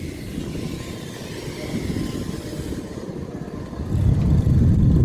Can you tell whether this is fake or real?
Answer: real